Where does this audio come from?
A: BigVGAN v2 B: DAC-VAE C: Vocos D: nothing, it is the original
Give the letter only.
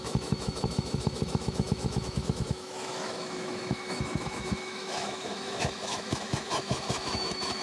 B